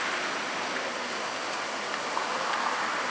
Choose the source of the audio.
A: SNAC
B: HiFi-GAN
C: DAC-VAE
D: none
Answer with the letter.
D